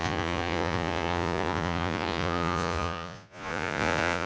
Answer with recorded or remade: remade